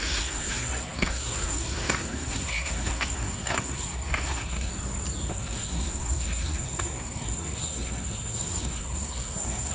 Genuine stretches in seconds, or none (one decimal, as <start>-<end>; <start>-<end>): 4.7-5.3